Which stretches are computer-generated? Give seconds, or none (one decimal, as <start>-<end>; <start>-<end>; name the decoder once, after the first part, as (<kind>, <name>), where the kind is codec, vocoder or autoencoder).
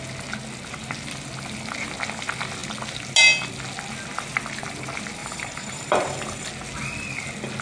5.2-6.5 (vocoder, BigVGAN v2)